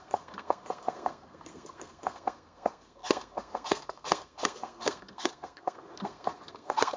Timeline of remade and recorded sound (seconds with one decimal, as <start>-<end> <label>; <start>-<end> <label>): 0.0-7.0 remade